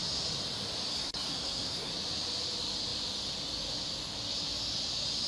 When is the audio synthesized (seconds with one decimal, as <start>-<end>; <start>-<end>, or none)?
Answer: 0.9-1.9